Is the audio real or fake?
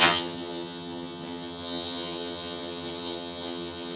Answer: fake